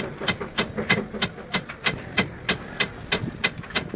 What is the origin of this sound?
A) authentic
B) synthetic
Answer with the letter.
B